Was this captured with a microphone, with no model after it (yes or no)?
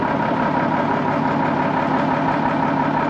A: yes